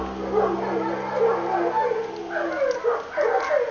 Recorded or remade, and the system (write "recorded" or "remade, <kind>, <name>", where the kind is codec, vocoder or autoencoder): recorded